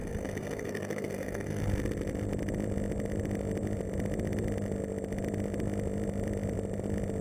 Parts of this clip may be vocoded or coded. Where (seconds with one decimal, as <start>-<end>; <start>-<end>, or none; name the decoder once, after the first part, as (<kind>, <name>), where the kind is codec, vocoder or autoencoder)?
0.0-1.6 (codec, SNAC)